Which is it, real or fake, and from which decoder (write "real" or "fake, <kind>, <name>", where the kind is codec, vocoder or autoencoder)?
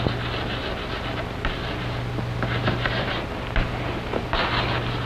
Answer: real